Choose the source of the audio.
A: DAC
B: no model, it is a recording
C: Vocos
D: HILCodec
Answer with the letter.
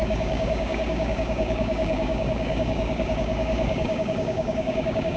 A